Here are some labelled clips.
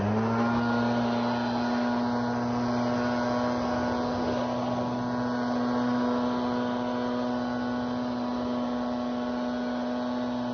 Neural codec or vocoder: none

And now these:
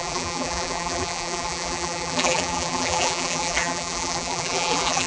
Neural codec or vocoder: vocoder, BigVGAN v2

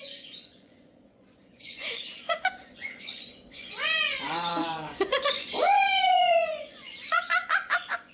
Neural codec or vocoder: vocoder, Vocos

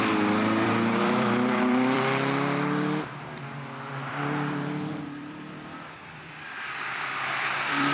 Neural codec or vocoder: vocoder, BigVGAN v2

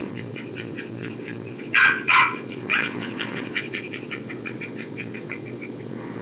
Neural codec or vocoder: vocoder, Vocos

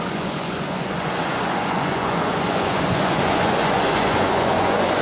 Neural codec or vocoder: vocoder, Vocos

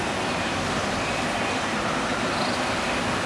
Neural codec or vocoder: none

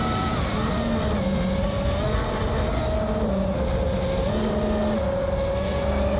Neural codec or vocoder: none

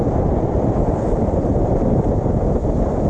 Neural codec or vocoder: none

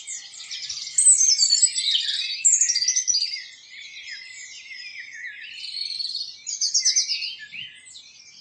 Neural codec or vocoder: none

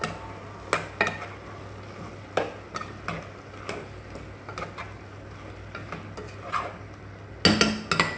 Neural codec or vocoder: none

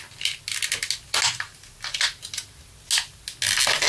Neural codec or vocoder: none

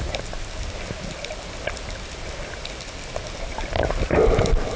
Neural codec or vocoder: none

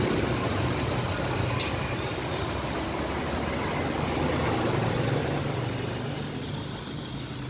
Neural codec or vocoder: none